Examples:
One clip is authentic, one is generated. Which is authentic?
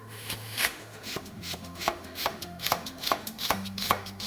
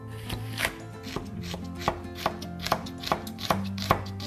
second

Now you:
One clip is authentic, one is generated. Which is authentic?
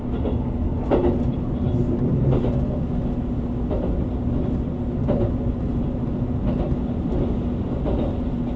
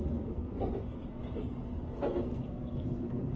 first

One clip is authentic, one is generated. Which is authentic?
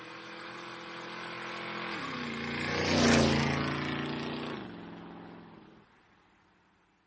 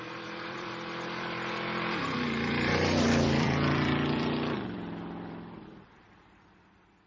first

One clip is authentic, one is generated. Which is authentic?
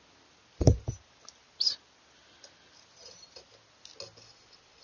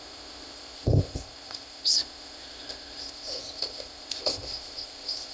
first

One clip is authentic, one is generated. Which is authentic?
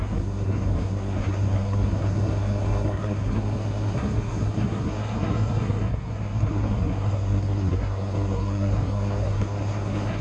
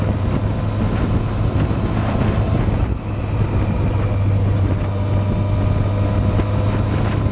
second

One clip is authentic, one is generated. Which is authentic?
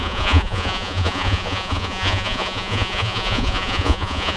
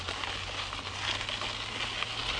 second